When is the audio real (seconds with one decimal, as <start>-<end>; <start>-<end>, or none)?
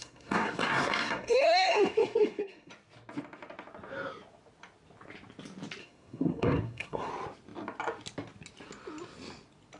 2.7-5.8; 7.1-9.8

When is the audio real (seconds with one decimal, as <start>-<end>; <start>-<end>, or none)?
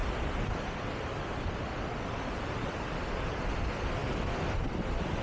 0.0-5.2